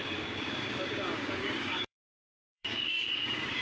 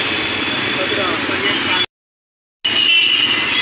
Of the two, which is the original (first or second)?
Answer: second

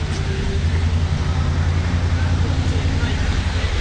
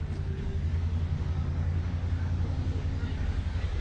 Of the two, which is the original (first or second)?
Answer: first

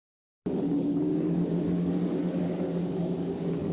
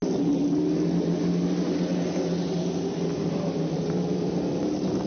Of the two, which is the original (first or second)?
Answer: second